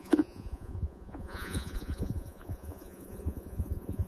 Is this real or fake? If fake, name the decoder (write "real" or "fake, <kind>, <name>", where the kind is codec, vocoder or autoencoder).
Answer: fake, vocoder, Vocos